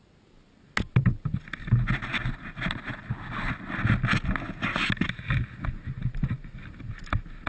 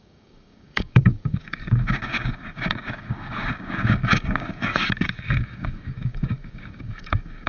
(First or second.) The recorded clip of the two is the first